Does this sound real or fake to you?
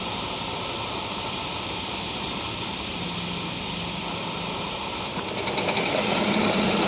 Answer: real